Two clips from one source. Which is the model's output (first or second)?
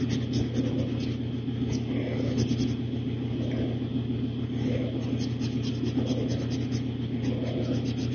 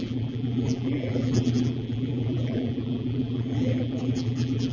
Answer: second